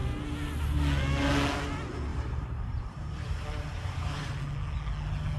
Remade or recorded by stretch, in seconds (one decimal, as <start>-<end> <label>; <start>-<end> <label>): 0.0-2.1 recorded; 2.1-4.4 remade; 4.4-5.4 recorded